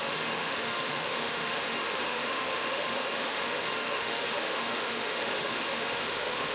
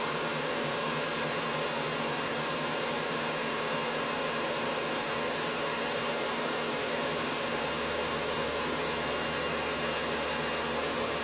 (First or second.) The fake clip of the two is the first